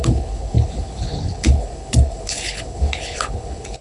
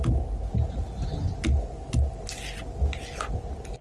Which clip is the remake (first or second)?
first